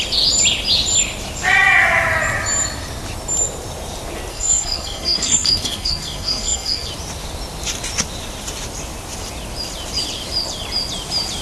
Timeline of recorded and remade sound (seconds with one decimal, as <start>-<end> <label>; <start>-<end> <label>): 0.0-4.3 recorded; 4.3-6.9 remade; 6.9-11.4 recorded